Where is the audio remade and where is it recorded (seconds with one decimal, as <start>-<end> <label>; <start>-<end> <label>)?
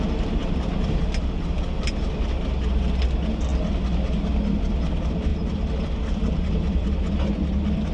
0.0-7.9 recorded